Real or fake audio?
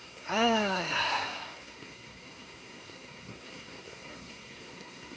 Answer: fake